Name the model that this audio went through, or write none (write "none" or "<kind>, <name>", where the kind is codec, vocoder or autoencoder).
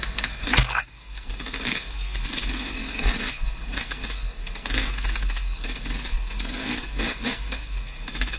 codec, SNAC